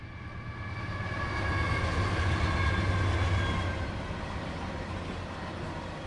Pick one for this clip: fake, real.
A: real